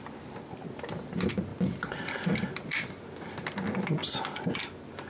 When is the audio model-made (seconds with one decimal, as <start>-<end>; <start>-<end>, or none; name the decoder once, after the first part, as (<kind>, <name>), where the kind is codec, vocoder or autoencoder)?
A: none